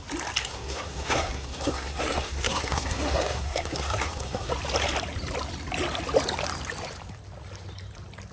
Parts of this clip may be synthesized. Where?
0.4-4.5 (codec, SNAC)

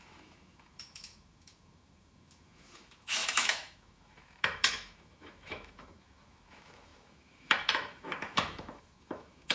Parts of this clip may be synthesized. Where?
0.0-9.5 (autoencoder, DAC-VAE)

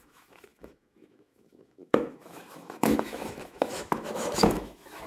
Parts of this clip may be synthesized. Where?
0.0-5.1 (autoencoder, DAC-VAE)

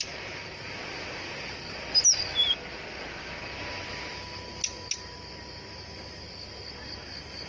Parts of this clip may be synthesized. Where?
none